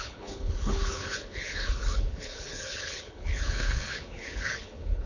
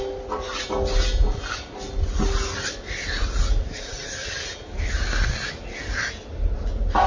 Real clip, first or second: second